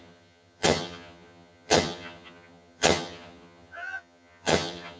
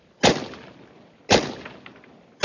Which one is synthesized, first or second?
first